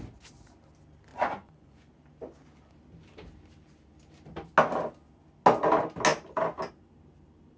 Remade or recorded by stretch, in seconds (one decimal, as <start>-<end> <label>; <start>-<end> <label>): 0.0-1.1 recorded; 1.1-1.9 remade; 1.9-7.6 recorded